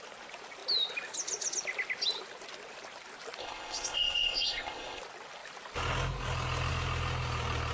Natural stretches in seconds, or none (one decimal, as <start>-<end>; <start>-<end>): 0.0-3.4; 5.0-7.7